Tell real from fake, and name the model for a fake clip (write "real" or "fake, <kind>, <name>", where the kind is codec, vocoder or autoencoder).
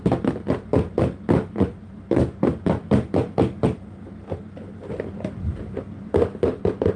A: real